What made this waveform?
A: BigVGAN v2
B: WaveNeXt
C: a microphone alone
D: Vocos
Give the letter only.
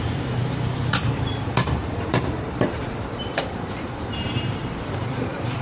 A